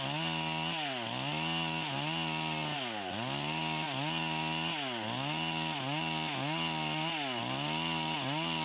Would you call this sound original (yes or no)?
yes